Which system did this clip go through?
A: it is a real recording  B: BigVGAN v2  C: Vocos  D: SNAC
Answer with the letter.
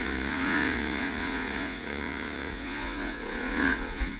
C